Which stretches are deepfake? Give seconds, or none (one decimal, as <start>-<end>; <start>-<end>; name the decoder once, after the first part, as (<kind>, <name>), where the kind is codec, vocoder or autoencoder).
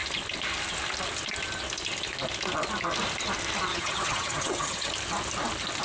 3.7-4.9 (vocoder, HiFi-GAN)